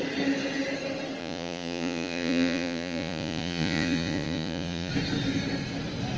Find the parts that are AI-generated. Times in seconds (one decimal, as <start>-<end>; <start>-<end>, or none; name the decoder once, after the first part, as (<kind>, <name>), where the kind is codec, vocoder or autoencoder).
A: 1.2-4.9 (vocoder, Vocos)

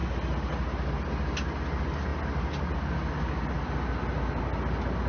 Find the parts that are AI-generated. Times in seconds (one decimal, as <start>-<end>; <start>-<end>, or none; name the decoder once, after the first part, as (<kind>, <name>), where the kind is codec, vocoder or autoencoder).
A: none

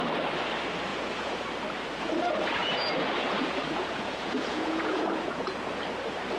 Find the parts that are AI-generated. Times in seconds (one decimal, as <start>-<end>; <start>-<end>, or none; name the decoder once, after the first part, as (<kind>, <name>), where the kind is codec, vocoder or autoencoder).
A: 0.9-1.5 (vocoder, Vocos); 2.6-5.7

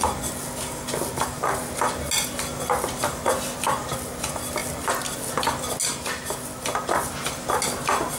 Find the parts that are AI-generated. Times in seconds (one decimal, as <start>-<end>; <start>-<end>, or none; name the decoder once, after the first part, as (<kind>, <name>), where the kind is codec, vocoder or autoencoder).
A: none

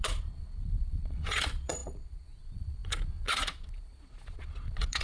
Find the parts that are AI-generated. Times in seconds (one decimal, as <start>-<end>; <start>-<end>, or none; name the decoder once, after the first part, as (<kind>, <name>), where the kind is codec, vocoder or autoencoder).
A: 0.0-5.0 (vocoder, Vocos)